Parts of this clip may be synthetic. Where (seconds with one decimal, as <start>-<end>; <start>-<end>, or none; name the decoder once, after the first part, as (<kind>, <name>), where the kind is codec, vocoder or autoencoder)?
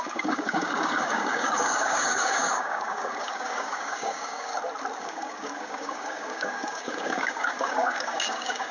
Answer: 0.0-4.5 (codec, DAC); 5.0-8.7